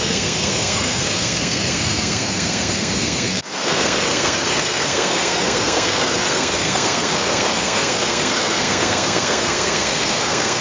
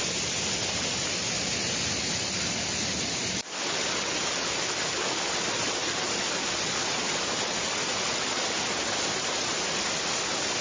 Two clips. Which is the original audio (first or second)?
second